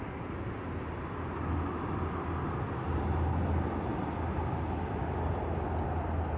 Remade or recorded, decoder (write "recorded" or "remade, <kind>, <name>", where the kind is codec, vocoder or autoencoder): recorded